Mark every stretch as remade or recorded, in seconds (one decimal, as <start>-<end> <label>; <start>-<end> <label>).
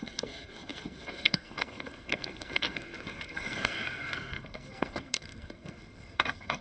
0.0-6.6 remade